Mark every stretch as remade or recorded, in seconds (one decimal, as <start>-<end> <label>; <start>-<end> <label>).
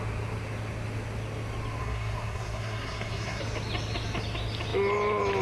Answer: 0.0-1.8 recorded; 1.8-3.4 remade; 3.4-5.4 recorded